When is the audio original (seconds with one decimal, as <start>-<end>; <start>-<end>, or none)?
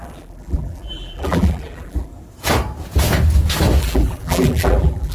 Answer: 2.1-3.8